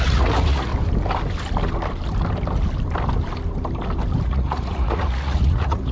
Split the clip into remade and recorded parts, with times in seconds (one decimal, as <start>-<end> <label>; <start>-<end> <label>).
0.0-0.7 remade; 0.7-4.2 recorded; 4.2-5.9 remade